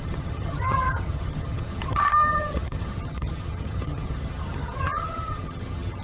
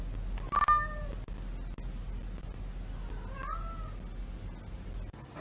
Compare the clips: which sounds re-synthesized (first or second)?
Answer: first